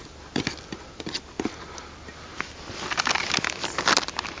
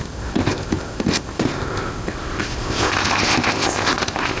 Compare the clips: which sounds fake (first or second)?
second